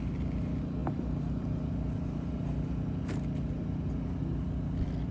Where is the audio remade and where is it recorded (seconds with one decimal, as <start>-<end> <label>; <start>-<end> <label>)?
0.0-5.1 recorded